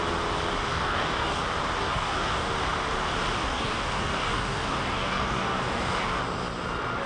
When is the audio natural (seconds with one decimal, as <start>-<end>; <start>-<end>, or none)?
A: 0.0-0.7; 1.4-1.8; 2.5-3.4; 6.2-7.1